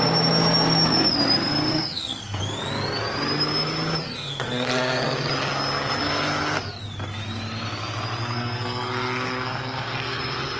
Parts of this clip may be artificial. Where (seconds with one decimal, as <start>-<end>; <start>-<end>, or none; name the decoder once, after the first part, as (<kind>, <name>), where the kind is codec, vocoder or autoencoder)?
1.7-2.4 (codec, SNAC); 4.0-5.3; 8.2-10.2